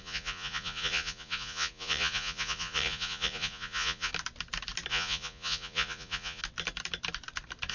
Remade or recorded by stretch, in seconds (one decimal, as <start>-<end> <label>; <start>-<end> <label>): 0.0-4.1 remade; 4.1-4.9 recorded; 4.9-6.4 remade; 6.4-7.7 recorded